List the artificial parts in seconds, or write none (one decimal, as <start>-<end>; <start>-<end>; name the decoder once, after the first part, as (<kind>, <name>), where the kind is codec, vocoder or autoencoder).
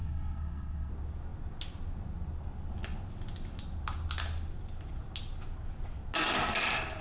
0.0-0.9 (codec, SNAC)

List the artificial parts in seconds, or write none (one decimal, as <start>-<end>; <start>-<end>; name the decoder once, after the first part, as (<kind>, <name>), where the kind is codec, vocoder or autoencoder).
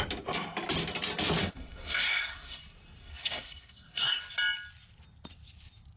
1.4-2.6 (codec, SNAC); 3.0-4.2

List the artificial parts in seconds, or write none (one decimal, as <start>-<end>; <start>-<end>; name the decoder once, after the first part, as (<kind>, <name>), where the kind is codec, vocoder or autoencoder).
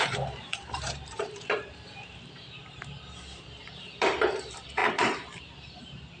0.0-4.8 (vocoder, BigVGAN v2); 5.4-6.2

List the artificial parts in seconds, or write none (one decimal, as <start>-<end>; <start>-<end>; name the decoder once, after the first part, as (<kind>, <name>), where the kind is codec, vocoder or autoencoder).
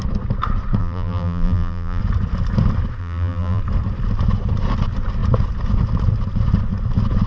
0.8-2.0 (vocoder, BigVGAN v2); 3.0-3.6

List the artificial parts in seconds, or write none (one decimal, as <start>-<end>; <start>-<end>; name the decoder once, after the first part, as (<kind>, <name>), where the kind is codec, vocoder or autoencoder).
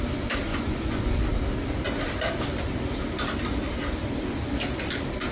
0.5-1.0 (vocoder, Vocos)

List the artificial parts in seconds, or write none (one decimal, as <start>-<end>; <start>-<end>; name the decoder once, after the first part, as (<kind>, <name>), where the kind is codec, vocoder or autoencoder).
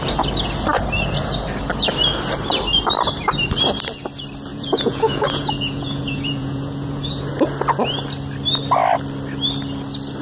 4.5-7.2 (vocoder, Vocos)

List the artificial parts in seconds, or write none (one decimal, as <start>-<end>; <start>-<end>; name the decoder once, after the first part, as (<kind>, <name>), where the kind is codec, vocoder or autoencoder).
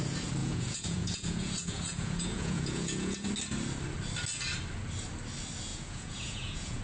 0.4-3.3 (vocoder, Vocos); 5.7-6.8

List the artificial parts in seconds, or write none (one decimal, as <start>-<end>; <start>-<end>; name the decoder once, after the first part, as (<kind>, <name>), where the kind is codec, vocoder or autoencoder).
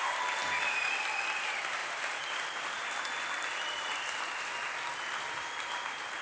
none